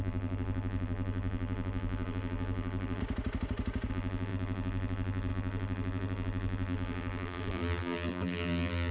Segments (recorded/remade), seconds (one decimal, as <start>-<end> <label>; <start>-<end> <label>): 0.0-3.0 remade; 3.0-3.9 recorded; 3.9-8.9 remade